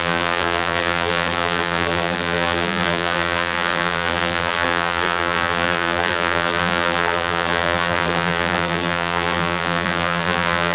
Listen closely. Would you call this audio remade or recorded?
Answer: remade